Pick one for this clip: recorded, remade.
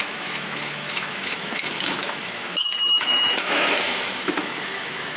remade